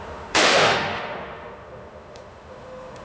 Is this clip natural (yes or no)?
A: no